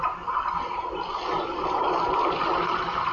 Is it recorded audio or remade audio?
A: recorded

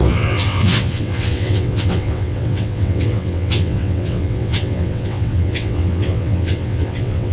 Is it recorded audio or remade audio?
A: remade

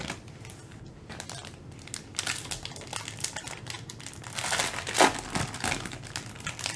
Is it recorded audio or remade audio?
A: recorded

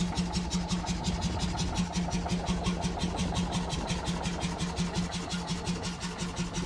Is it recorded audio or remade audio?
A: recorded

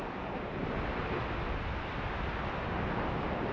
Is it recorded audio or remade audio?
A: recorded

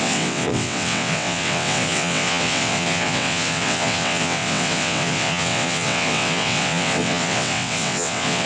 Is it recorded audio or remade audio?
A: remade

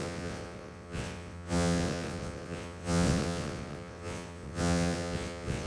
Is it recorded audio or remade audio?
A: remade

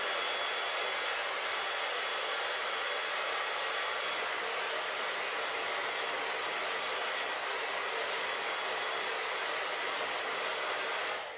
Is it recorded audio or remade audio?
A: recorded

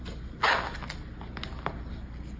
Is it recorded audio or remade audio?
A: recorded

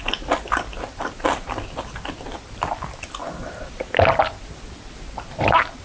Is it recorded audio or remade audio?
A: recorded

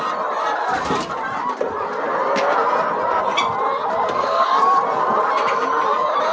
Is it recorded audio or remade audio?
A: recorded